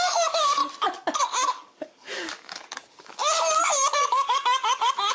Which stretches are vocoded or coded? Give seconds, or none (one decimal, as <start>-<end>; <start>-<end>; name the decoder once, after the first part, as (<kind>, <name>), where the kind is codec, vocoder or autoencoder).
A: 0.0-0.6 (codec, DAC); 1.2-3.2; 3.9-5.1